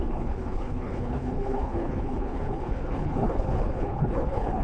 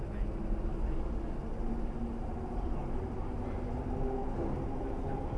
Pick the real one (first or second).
second